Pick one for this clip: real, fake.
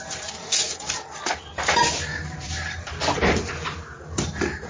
fake